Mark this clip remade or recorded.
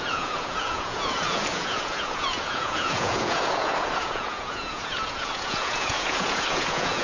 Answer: remade